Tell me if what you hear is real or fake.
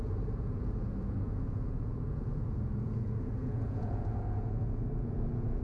fake